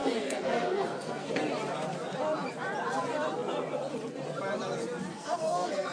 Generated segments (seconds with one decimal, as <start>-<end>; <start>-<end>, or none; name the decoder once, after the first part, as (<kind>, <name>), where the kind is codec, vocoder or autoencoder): 0.0-1.3 (codec, SNAC); 5.1-5.9